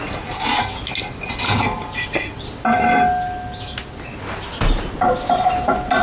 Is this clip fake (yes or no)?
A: no